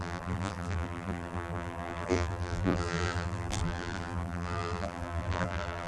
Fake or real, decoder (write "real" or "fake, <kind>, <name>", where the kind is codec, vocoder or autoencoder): fake, vocoder, BigVGAN v2